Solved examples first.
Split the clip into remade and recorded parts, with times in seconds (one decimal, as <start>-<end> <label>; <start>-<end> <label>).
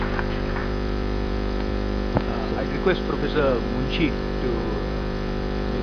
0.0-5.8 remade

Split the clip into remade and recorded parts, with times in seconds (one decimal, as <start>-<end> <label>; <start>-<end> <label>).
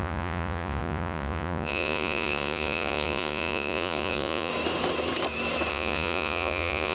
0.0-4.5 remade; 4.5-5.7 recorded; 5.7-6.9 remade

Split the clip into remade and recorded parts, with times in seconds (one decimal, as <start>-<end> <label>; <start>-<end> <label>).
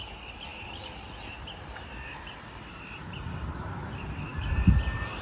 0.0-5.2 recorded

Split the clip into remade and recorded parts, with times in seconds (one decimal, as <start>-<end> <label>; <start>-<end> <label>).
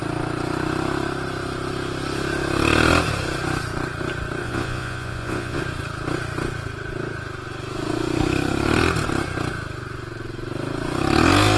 0.0-4.4 recorded; 4.4-5.6 remade; 5.6-11.6 recorded